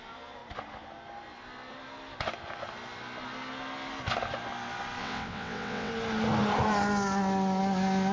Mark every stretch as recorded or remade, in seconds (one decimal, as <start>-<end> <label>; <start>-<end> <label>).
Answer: 0.0-5.0 recorded; 5.0-5.9 remade; 5.9-8.1 recorded